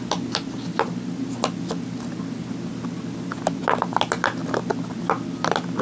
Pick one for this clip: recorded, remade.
recorded